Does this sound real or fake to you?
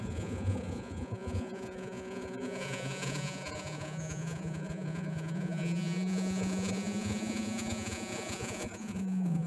fake